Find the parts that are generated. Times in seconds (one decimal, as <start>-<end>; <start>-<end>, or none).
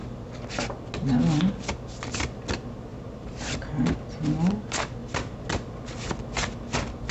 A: 2.9-3.7